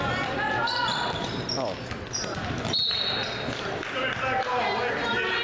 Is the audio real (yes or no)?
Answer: yes